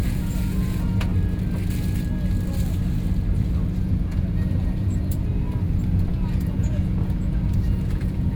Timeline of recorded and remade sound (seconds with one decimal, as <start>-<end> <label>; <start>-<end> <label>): 0.0-1.1 remade; 1.1-3.8 recorded; 3.8-5.3 remade; 5.3-6.1 recorded; 6.1-8.4 remade